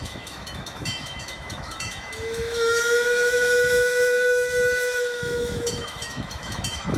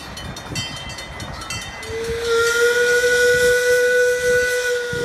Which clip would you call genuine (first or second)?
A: second